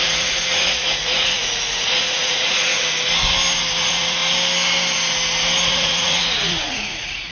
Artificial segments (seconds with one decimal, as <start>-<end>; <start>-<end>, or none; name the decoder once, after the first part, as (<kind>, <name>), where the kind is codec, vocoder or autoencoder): 0.0-2.7 (vocoder, Vocos); 3.8-4.2; 5.6-7.3